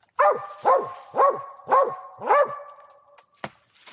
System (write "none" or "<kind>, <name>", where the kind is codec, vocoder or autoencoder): none